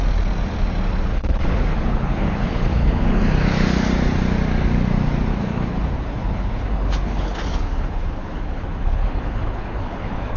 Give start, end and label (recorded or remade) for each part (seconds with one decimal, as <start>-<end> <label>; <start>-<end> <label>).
0.0-1.1 recorded; 1.1-3.2 remade; 3.2-5.3 recorded; 5.3-10.4 remade